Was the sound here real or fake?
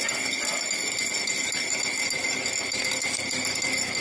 real